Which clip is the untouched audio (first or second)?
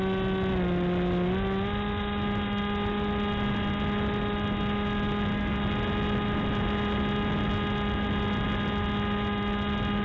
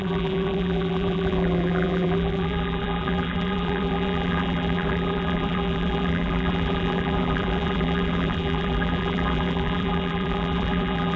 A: first